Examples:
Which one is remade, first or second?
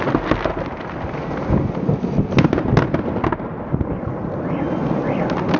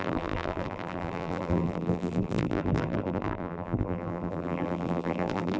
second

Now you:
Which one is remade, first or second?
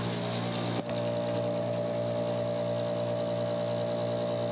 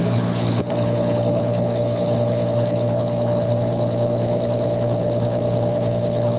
second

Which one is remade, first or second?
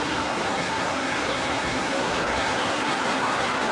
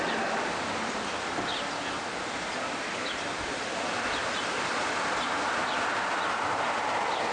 first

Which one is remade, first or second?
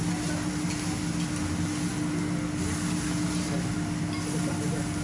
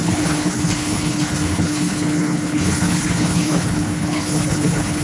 second